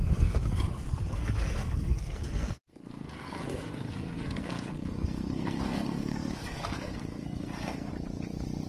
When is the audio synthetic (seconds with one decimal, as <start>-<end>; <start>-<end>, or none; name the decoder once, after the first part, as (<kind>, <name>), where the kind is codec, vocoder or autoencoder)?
0.0-7.9 (codec, SNAC)